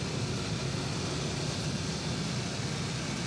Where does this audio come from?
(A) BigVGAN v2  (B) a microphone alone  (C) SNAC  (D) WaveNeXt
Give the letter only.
B